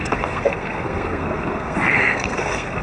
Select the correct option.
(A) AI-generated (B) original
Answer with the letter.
A